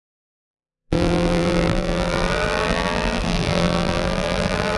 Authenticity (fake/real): fake